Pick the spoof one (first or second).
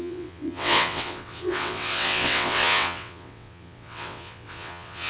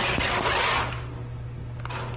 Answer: first